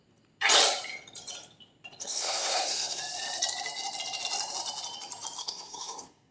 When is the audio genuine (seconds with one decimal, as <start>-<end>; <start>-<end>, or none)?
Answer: 0.0-2.0; 3.0-5.4

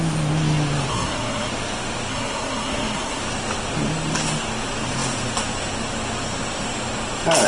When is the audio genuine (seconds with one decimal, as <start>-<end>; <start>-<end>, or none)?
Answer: 0.0-0.9; 1.5-2.1; 3.2-7.5

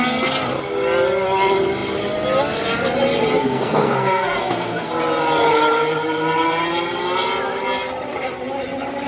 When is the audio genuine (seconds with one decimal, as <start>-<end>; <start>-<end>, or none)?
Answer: 0.0-3.4; 4.9-9.1